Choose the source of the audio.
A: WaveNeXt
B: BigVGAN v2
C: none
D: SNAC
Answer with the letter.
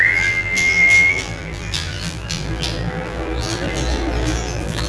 B